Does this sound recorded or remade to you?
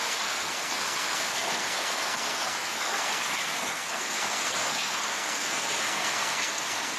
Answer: remade